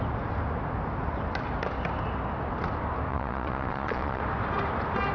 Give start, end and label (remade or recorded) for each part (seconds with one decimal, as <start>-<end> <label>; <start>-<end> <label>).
0.0-3.1 recorded; 3.1-4.2 remade; 4.2-5.1 recorded